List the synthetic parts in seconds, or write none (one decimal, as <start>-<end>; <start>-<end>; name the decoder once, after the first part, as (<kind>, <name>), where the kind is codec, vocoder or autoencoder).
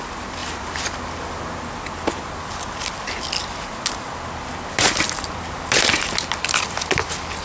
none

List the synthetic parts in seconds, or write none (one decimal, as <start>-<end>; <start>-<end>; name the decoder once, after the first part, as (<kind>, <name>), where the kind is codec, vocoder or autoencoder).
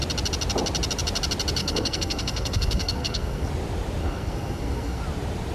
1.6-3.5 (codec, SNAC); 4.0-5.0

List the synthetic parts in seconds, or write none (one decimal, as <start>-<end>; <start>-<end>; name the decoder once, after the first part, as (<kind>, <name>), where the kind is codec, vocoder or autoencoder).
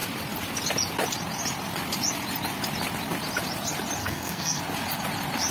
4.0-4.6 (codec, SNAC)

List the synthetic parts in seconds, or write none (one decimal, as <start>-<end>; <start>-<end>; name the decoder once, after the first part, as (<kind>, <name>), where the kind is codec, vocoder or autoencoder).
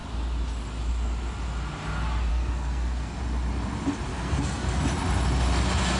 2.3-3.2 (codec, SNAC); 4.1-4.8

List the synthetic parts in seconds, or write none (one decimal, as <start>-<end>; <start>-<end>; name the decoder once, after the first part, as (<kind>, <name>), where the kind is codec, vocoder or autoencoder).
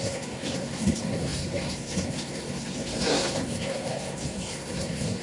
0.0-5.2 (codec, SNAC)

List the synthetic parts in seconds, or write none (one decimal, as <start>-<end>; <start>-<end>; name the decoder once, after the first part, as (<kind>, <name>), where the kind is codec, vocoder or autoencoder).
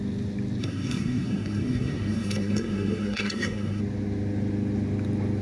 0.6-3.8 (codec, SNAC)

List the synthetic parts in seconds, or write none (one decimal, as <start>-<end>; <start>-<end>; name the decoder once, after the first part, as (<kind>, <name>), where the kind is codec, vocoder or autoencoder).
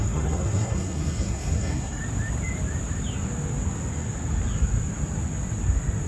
0.0-2.0 (codec, SNAC)